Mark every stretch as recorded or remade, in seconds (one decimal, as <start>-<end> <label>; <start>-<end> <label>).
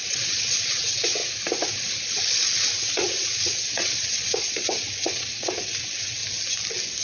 0.0-1.2 remade; 1.2-2.9 recorded; 2.9-6.2 remade; 6.2-7.0 recorded